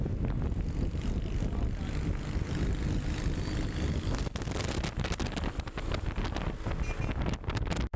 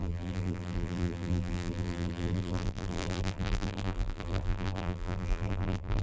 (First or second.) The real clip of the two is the first